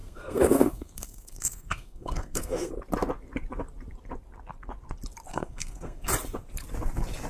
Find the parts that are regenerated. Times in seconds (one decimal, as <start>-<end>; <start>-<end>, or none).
0.0-2.7; 5.3-6.1